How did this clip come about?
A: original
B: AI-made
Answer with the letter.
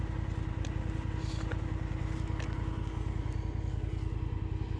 A